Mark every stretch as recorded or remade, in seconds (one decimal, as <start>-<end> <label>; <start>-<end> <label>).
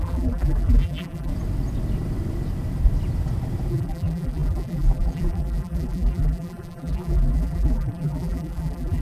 0.0-1.3 remade; 1.3-3.7 recorded; 3.7-9.0 remade